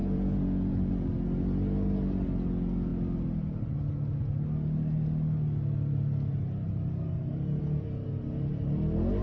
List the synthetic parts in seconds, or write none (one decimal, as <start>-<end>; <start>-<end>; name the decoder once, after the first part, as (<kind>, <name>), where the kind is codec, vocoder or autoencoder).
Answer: 0.0-0.9 (vocoder, Vocos)